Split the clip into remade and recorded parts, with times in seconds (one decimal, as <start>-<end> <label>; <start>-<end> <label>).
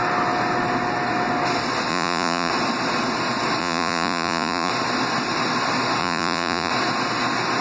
0.0-1.9 recorded; 1.9-2.5 remade; 2.5-3.6 recorded; 3.6-4.7 remade; 4.7-6.0 recorded; 6.0-6.7 remade; 6.7-7.6 recorded